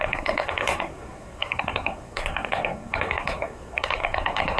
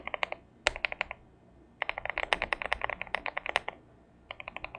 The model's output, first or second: first